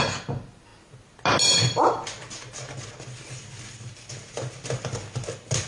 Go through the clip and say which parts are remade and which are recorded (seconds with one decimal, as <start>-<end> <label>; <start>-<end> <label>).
0.0-5.7 recorded